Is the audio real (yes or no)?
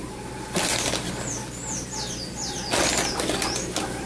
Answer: yes